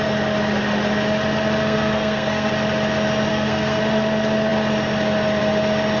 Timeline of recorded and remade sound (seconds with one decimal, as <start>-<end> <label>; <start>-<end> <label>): 0.0-1.6 recorded; 1.6-2.5 remade; 2.5-3.3 recorded; 3.3-3.8 remade; 3.8-6.0 recorded